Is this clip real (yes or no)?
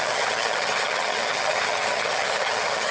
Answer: no